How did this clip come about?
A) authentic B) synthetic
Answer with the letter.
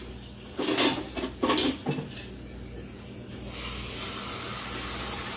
A